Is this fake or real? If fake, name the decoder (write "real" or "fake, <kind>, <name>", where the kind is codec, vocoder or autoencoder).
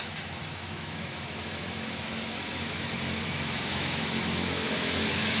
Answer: fake, autoencoder, DAC-VAE